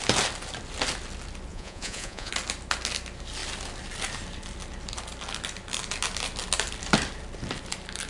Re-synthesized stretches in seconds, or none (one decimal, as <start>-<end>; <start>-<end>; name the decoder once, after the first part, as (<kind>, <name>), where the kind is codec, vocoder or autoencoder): 1.5-2.3 (vocoder, Vocos)

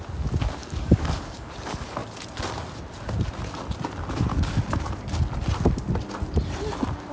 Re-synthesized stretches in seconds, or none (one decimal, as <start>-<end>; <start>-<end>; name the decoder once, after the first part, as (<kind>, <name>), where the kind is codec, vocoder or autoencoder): 0.6-1.5 (codec, DAC)

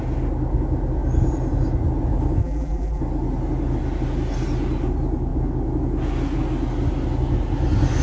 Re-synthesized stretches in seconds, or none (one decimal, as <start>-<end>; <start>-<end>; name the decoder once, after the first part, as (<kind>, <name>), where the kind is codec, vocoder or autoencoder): 2.4-3.0 (vocoder, BigVGAN v2)

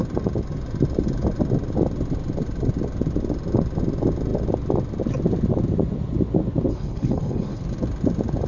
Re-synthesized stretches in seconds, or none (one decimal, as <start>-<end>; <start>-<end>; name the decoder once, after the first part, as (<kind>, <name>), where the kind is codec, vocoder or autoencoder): 6.7-7.6 (codec, HILCodec)

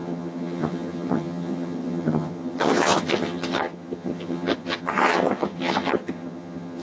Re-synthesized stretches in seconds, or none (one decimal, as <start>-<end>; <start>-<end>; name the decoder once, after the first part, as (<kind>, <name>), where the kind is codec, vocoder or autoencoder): 0.0-6.8 (vocoder, HiFi-GAN)

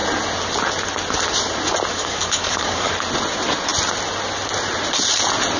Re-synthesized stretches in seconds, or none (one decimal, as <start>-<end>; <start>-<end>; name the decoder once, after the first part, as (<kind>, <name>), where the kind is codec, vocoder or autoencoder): 1.9-2.9 (codec, DAC)

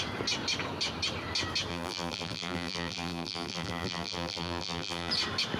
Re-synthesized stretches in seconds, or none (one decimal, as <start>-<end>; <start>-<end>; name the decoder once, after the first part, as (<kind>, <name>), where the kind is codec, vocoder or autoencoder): 1.7-5.1 (vocoder, BigVGAN v2)

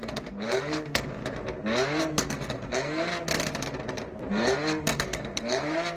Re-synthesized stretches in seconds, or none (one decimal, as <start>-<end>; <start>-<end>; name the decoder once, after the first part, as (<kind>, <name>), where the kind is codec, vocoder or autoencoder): 0.0-1.2 (codec, SNAC); 2.0-3.1; 4.3-6.0